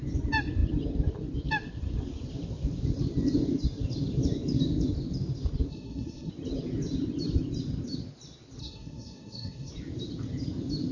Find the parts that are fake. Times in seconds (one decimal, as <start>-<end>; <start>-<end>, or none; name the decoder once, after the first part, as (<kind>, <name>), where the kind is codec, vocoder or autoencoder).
5.7-6.3 (codec, SNAC); 8.6-9.7